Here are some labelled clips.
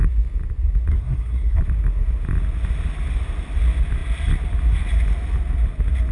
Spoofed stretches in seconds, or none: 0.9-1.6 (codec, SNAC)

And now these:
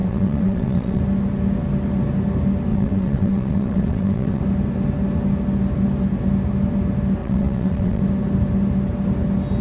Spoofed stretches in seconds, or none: 0.0-1.0 (vocoder, WaveNeXt); 2.7-4.4; 7.2-8.0

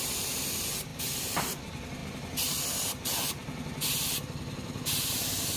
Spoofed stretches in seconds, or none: none

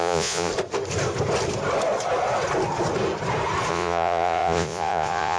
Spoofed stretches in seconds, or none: 0.0-0.5 (vocoder, Vocos); 3.7-5.4

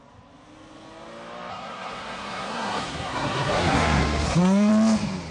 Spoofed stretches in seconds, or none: 1.5-4.7 (codec, SNAC)

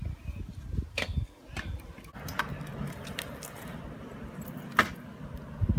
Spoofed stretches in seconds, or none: 0.9-1.4 (codec, SNAC)

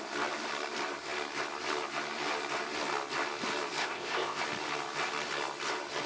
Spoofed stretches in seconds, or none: 3.8-4.4 (codec, ZipCodec)

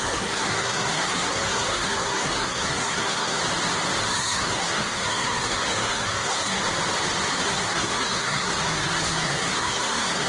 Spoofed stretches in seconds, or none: 0.0-3.4 (codec, SNAC); 4.1-6.6; 7.3-10.3